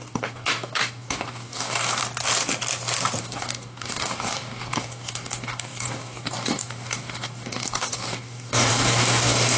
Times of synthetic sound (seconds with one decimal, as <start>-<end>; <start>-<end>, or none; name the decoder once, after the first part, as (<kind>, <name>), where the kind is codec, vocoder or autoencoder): 0.0-2.0 (codec, DAC); 3.2-9.6